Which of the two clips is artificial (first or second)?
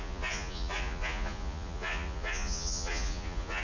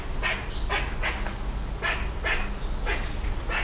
first